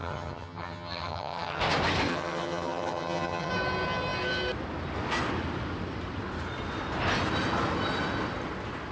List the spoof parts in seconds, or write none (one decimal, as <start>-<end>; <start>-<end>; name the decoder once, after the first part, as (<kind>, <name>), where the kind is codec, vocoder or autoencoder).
0.0-1.6 (vocoder, HiFi-GAN); 2.1-3.5